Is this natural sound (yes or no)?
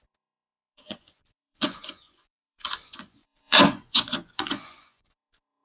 no